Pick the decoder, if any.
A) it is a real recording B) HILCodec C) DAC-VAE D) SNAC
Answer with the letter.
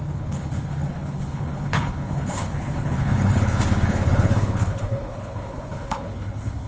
B